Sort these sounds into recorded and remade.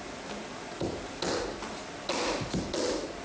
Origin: recorded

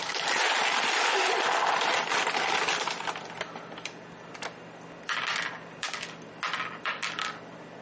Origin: recorded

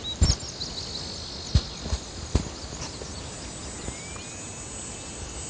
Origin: recorded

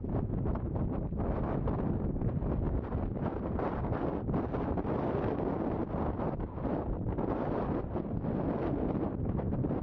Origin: recorded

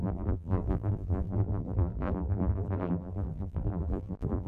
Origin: remade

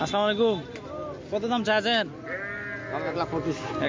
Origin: recorded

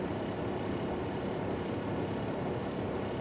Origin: recorded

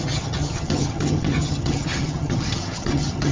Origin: remade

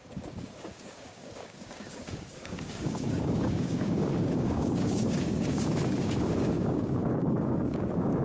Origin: remade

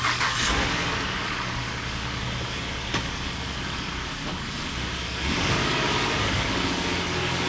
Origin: remade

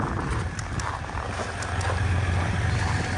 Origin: recorded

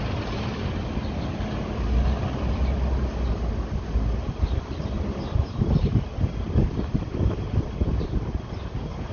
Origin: recorded